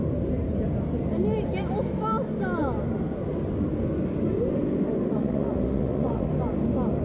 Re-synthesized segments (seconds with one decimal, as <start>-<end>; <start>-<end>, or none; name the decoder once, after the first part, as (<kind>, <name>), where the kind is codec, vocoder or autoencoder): 5.1-6.3 (vocoder, Vocos)